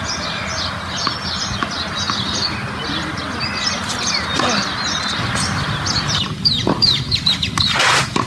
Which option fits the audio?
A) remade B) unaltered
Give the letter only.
B